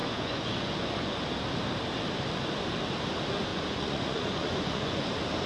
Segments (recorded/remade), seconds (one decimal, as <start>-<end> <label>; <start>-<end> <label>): 0.0-1.2 remade; 1.2-3.5 recorded; 3.5-5.1 remade; 5.1-5.5 recorded